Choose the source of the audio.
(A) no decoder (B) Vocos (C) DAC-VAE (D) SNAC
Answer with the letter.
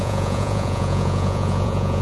B